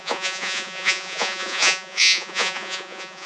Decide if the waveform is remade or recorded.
remade